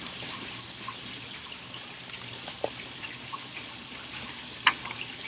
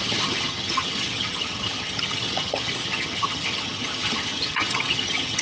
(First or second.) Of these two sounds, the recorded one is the first